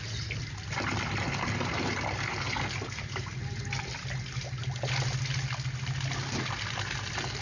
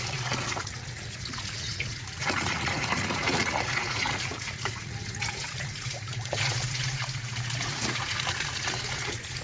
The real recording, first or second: first